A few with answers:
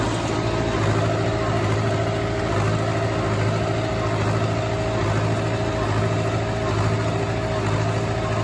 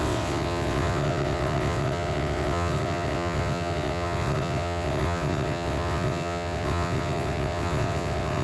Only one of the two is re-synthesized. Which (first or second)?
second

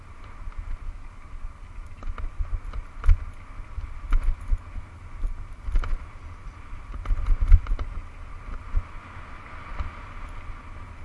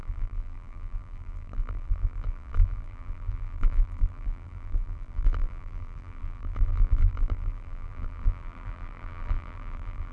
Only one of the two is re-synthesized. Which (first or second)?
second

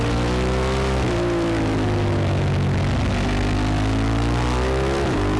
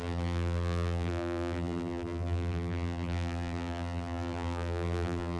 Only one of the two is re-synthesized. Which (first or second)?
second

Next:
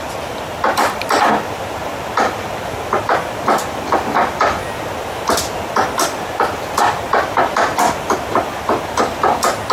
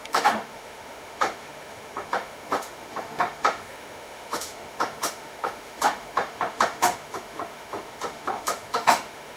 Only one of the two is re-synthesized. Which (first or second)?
second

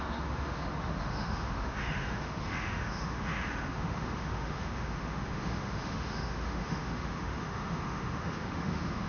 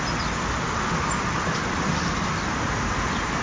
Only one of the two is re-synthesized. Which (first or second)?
first